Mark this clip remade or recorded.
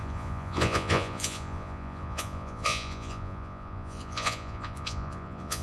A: remade